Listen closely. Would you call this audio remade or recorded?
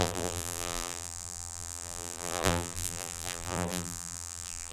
remade